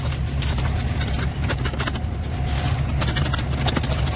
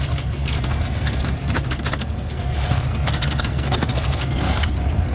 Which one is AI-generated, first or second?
second